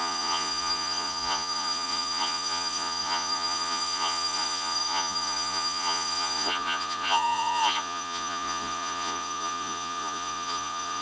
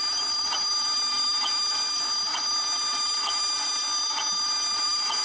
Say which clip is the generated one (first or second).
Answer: first